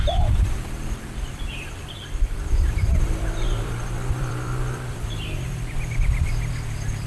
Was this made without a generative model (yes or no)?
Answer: no